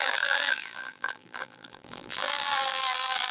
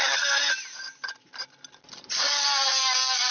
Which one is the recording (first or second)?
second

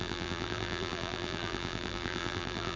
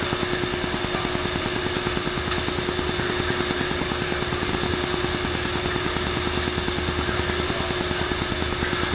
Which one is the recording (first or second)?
second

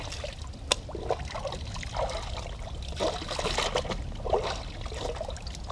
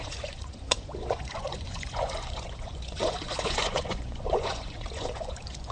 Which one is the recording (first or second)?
first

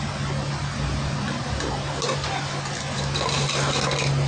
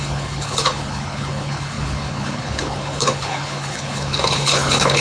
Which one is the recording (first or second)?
first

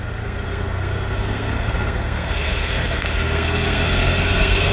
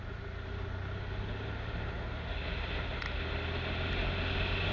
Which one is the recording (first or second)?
second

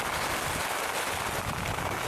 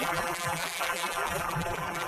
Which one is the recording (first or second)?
first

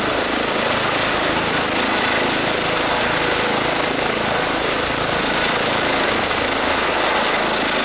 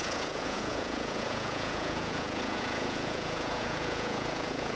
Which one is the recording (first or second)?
first